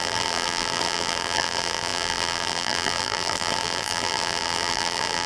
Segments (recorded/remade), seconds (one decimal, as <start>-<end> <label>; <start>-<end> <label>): 0.0-5.3 remade